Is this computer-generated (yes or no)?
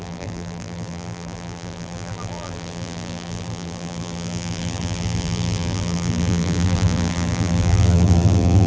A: yes